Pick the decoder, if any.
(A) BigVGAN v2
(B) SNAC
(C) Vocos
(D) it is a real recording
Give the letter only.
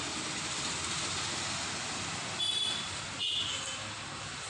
D